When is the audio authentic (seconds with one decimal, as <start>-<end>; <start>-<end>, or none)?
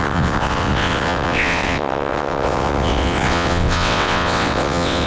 none